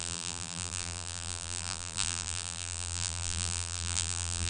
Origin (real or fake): fake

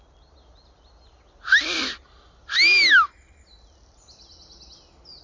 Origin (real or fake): real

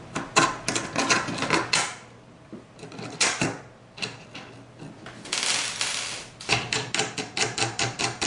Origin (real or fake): real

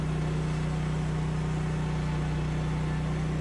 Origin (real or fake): real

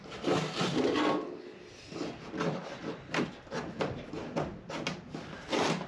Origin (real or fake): real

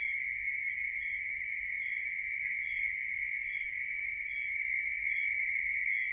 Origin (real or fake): fake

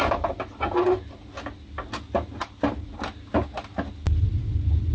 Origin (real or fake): real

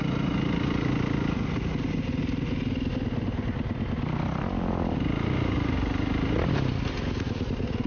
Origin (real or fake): real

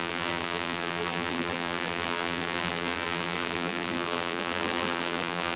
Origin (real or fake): fake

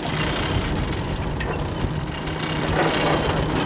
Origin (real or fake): real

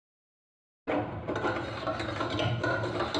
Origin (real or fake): real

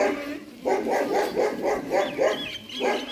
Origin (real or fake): real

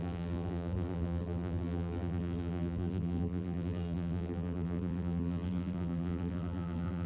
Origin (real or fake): fake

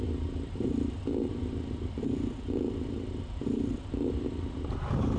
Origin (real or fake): fake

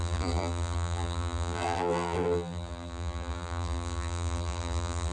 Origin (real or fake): fake